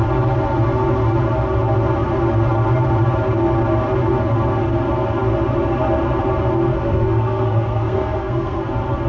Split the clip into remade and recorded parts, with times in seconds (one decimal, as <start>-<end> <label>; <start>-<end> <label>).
0.0-6.7 recorded; 6.7-8.7 remade; 8.7-9.1 recorded